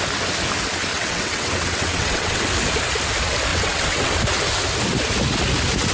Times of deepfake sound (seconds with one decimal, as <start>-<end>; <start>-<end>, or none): 0.9-2.4; 3.5-4.2